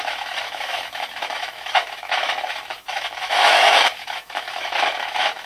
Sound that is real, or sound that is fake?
fake